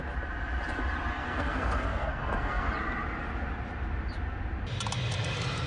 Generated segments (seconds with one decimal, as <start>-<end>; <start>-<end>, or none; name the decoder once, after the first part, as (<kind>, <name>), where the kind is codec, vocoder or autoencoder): 1.1-2.7 (codec, SNAC)